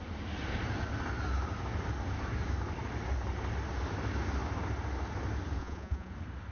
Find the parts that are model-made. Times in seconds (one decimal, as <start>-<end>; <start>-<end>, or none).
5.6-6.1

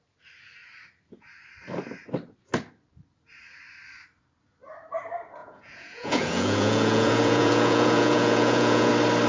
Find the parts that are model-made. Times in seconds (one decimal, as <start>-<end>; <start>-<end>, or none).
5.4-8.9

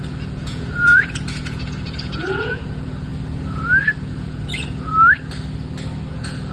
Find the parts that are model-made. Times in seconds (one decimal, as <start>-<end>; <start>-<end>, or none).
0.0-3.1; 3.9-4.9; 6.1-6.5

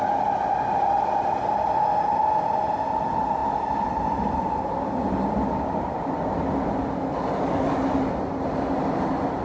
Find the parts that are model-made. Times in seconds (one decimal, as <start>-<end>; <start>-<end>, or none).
none

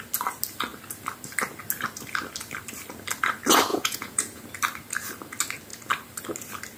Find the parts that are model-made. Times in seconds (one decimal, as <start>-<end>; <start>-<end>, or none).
3.7-4.5